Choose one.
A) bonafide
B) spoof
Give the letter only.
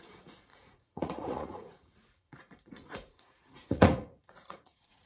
B